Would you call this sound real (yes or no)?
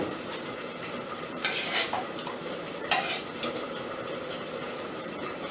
no